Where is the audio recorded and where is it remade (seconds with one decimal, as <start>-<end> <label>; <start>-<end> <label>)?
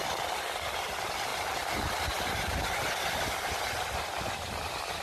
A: 0.0-5.0 recorded